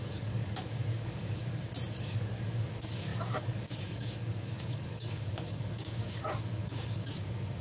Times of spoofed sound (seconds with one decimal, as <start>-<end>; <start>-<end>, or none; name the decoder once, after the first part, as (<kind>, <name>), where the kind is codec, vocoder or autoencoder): 0.0-1.5 (codec, DAC); 2.0-7.6